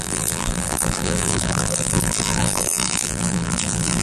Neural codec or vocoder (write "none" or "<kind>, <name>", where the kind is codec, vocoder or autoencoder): vocoder, BigVGAN v2